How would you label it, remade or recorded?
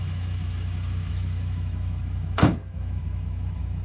remade